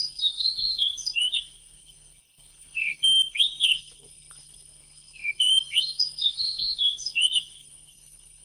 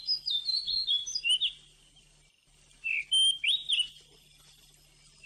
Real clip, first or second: second